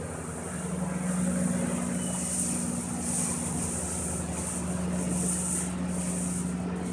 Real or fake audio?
real